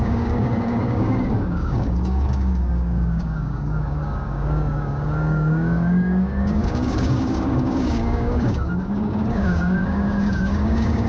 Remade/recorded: remade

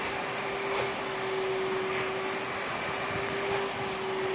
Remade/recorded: recorded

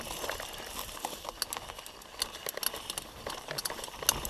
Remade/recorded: recorded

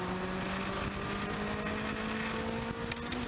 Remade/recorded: recorded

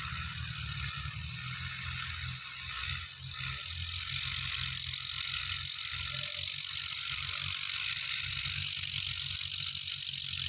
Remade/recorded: recorded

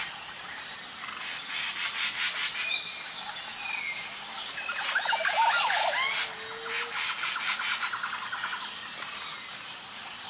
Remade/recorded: recorded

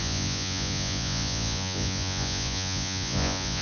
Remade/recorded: remade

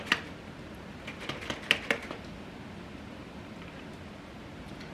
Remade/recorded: recorded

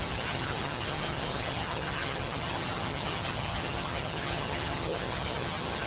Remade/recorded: remade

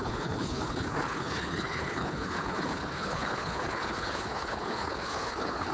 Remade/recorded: remade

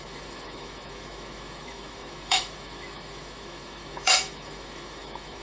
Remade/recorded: remade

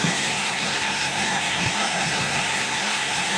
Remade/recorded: remade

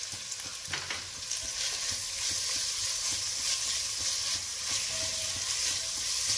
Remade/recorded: recorded